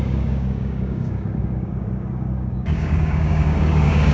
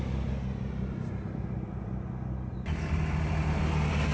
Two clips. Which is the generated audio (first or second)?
first